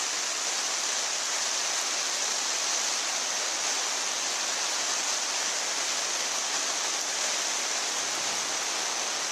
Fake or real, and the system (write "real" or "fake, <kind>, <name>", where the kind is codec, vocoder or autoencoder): real